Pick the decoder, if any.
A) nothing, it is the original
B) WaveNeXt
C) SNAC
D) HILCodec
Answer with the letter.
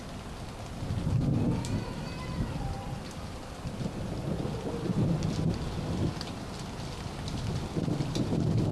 A